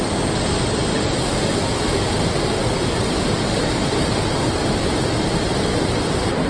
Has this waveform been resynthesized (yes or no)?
no